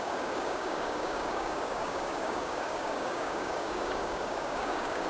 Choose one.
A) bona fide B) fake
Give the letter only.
B